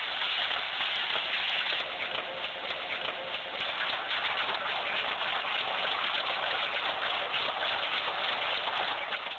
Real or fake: real